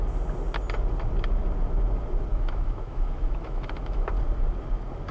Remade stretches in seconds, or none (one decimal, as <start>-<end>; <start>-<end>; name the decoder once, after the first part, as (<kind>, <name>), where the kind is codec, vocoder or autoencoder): 2.3-4.1 (autoencoder, DAC-VAE)